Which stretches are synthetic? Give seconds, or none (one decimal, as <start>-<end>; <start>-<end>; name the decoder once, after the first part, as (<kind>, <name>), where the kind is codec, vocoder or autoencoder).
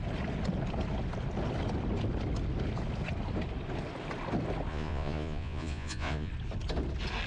4.7-6.3 (vocoder, Vocos)